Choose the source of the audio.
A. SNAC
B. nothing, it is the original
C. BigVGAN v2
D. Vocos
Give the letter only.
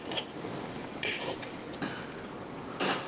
B